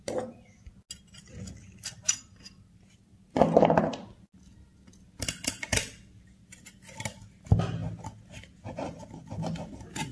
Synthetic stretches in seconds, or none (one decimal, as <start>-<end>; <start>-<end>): none